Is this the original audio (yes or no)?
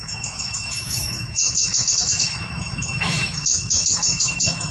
no